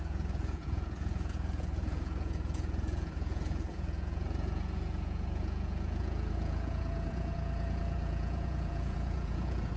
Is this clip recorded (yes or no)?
no